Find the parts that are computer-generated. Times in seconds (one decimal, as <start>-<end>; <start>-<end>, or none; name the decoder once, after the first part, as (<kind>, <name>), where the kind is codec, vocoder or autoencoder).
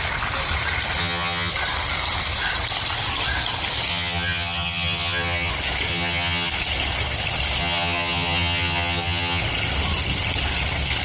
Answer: 1.0-1.5 (vocoder, HiFi-GAN); 3.9-5.5; 5.9-6.5; 7.6-9.4